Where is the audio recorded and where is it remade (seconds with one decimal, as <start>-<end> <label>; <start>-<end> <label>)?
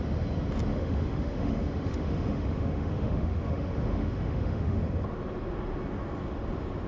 0.0-0.7 recorded; 0.7-4.8 remade; 4.8-6.9 recorded